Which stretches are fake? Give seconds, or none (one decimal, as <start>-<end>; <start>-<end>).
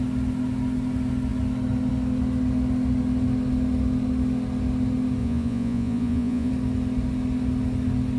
5.2-6.5